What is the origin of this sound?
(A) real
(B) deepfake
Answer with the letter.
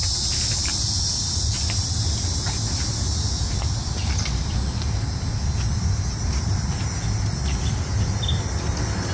A